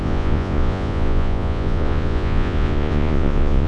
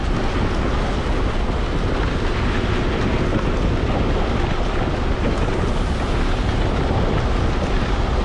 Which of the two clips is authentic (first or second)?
second